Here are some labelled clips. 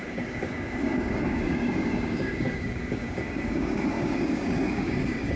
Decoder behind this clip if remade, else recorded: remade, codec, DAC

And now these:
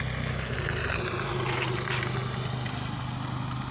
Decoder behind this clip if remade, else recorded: recorded